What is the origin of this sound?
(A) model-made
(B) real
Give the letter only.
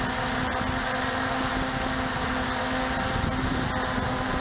B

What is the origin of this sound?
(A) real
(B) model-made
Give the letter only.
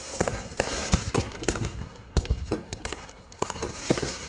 B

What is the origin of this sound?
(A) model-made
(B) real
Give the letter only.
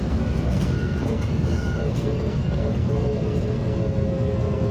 A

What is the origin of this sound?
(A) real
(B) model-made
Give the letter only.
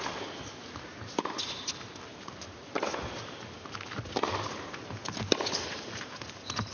A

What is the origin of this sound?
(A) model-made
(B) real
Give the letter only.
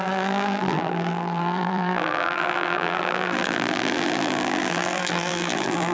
A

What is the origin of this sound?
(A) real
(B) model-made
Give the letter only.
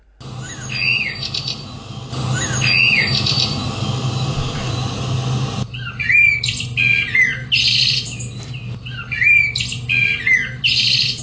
A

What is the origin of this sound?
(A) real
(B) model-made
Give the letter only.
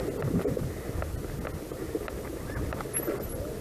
A